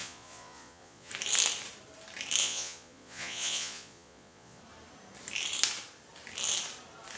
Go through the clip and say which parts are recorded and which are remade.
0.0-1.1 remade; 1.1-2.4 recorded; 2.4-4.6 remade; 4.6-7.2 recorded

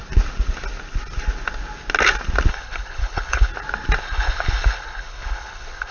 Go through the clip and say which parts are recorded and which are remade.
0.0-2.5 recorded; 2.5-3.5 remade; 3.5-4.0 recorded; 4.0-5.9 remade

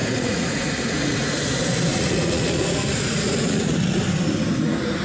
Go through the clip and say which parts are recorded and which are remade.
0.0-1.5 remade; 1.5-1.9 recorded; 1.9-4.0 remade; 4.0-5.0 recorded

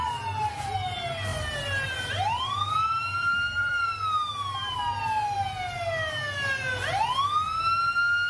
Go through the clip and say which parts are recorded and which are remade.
0.0-1.3 recorded; 1.3-3.7 remade; 3.7-8.3 recorded